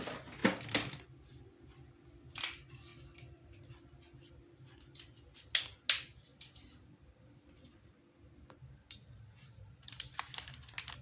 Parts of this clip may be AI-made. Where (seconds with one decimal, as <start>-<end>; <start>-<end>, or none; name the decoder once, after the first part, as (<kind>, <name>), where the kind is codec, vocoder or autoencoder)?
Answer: 2.9-3.8 (vocoder, BigVGAN v2); 6.3-10.1